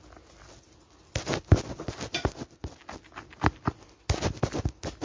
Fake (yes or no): no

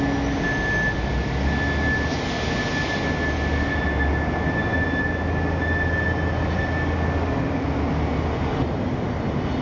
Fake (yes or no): no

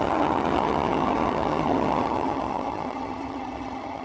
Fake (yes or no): yes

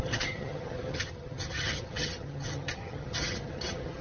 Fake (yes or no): yes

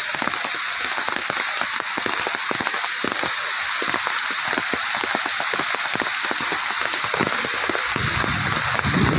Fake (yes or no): no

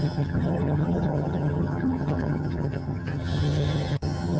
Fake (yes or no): yes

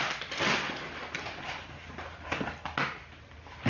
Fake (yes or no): no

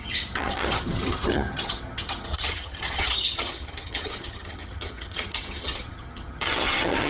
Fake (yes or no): yes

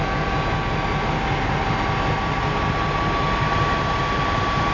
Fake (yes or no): no